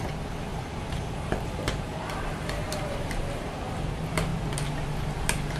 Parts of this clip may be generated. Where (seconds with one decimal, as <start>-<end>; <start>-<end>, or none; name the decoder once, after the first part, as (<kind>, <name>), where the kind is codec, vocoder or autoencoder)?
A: 0.5-3.9 (vocoder, BigVGAN v2)